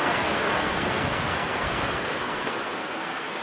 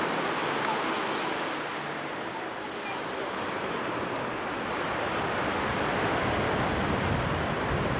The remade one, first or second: first